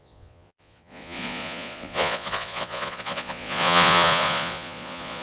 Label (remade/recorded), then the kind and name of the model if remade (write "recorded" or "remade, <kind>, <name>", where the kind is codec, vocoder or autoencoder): remade, vocoder, Vocos